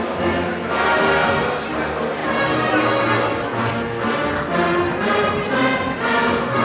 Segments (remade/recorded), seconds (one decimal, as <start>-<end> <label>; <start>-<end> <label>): 0.0-6.6 recorded